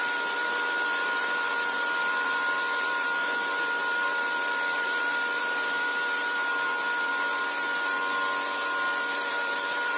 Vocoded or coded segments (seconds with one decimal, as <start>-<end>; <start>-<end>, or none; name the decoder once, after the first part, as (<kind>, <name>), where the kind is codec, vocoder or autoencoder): 0.0-7.1 (vocoder, BigVGAN v2); 9.1-10.0

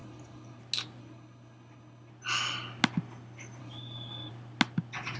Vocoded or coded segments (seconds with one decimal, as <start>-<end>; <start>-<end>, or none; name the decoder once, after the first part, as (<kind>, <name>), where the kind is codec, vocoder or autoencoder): 0.0-0.6 (codec, HILCodec); 1.0-2.1; 3.6-4.3

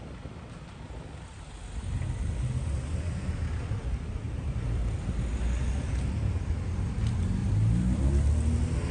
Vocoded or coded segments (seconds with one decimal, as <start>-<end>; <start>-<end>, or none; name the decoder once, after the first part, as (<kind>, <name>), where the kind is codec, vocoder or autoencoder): 7.4-8.0 (vocoder, BigVGAN v2)